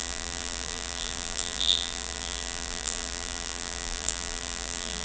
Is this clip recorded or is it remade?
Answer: remade